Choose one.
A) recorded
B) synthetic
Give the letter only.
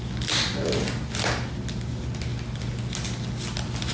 A